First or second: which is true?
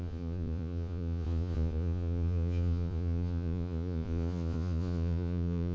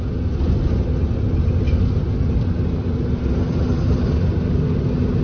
second